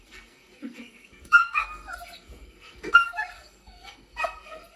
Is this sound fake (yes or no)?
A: yes